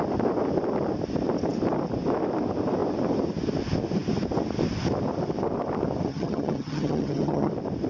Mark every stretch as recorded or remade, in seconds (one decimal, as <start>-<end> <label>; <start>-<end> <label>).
0.0-6.1 recorded; 6.1-7.5 remade; 7.5-7.9 recorded